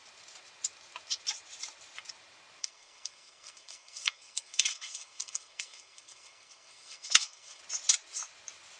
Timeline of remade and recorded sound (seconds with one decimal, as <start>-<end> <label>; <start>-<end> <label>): 0.0-2.6 recorded; 2.6-7.6 remade; 7.6-8.8 recorded